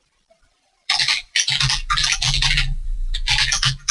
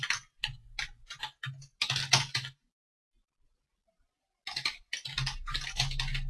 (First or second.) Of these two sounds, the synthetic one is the first